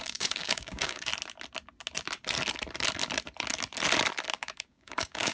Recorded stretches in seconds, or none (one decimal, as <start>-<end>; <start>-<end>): 1.1-4.3

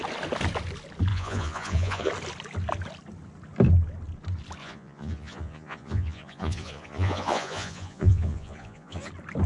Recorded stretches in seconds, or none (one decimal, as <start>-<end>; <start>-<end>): 0.0-1.1; 2.1-4.6; 9.1-9.5

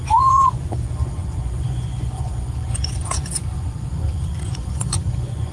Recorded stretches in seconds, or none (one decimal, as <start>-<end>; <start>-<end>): none

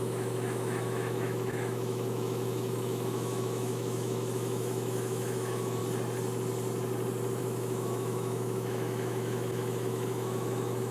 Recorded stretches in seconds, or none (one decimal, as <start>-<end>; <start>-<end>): 5.8-7.4

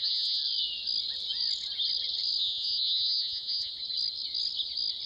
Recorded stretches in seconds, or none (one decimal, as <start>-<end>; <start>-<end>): 0.4-2.4; 3.7-5.1

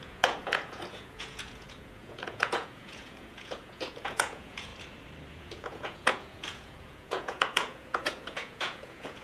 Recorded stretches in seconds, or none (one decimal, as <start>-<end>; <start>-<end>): 4.7-5.3

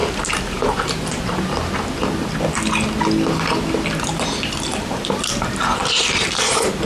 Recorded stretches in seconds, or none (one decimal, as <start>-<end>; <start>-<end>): 1.5-4.7; 6.5-6.9